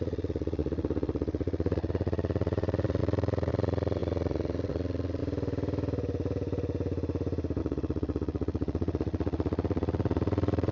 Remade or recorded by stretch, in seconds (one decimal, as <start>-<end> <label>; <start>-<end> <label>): 0.0-5.2 remade; 5.2-7.6 recorded; 7.6-10.7 remade